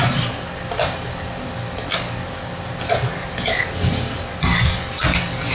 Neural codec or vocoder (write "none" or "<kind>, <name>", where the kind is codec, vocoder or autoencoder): none